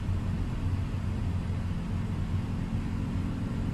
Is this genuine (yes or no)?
yes